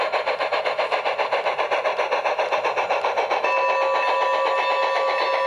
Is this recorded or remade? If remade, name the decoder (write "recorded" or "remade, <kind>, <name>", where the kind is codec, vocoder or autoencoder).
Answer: recorded